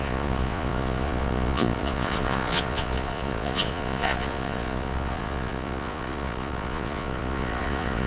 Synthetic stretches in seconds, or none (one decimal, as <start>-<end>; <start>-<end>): 0.0-8.1